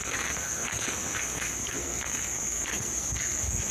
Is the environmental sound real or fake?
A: fake